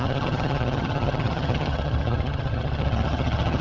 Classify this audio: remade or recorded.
remade